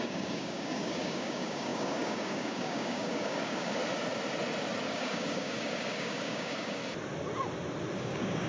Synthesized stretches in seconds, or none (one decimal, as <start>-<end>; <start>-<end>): 0.0-3.8; 4.8-6.8; 8.0-8.5